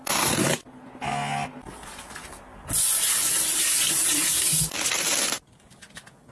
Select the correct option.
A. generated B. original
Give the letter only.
B